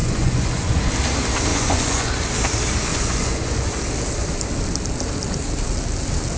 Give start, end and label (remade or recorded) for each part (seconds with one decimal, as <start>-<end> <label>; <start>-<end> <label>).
0.0-0.9 remade; 0.9-1.5 recorded; 1.5-2.1 remade; 2.1-2.9 recorded; 2.9-3.8 remade; 3.8-6.4 recorded

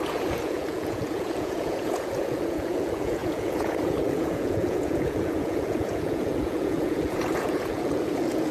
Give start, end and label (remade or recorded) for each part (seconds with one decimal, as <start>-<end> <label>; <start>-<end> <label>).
0.0-8.5 remade

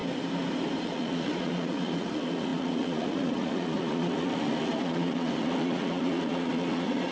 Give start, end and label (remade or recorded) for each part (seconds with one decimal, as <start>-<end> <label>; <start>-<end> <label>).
0.0-0.8 recorded; 0.8-7.1 remade

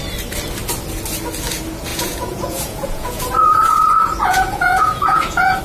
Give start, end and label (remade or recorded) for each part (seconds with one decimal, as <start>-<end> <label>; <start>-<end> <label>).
0.0-1.9 recorded; 1.9-5.6 remade

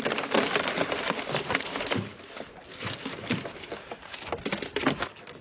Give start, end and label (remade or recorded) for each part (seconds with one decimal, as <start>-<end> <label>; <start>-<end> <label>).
0.0-5.4 recorded

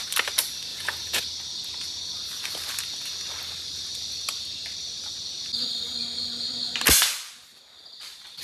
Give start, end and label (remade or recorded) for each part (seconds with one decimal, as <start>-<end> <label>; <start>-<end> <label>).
0.0-0.7 recorded; 0.7-1.2 remade; 1.2-8.4 recorded

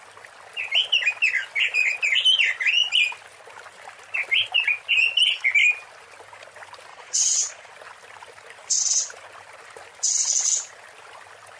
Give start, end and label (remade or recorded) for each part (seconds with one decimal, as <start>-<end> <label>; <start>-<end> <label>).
0.0-6.9 recorded; 6.9-7.7 remade; 7.7-11.6 recorded